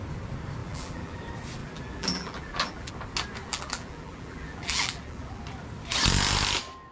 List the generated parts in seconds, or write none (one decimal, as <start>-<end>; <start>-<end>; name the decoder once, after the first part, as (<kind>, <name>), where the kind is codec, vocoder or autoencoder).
0.6-1.2 (vocoder, BigVGAN v2); 1.6-2.9; 3.5-5.4